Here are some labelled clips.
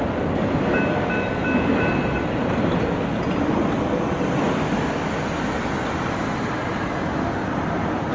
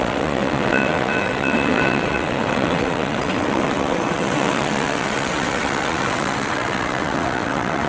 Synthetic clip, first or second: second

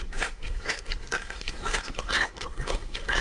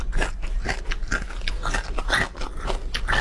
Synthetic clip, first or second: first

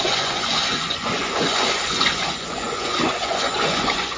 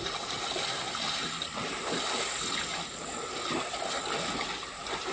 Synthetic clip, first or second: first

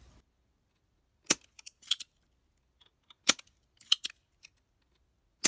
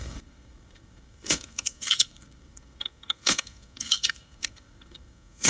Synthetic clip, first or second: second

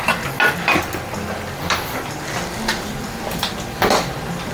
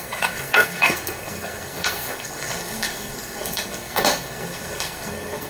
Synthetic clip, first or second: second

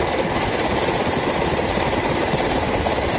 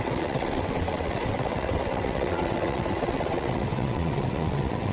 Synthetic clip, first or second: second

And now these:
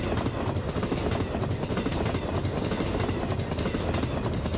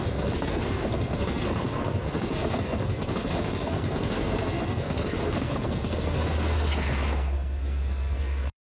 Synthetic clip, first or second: second